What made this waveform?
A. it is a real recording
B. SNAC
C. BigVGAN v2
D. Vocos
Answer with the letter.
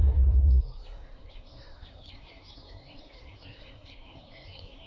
B